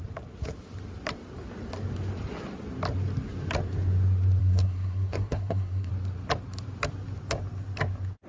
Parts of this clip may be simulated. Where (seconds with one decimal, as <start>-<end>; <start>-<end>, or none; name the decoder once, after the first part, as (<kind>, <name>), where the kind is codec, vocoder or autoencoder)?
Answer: 4.4-5.9 (codec, SNAC)